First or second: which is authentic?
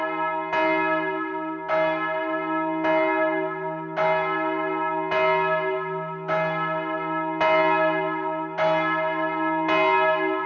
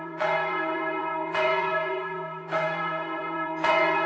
first